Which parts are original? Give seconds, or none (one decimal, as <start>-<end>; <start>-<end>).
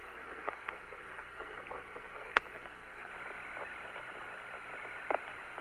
3.1-5.6